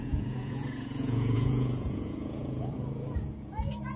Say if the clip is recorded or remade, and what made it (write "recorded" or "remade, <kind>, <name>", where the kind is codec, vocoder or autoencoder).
remade, vocoder, Vocos